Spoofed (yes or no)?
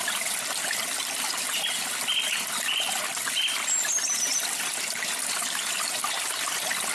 no